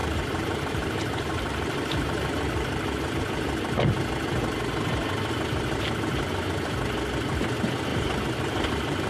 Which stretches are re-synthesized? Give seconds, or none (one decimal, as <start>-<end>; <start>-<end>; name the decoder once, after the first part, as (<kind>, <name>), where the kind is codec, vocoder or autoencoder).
0.0-3.2 (vocoder, BigVGAN v2); 7.9-9.1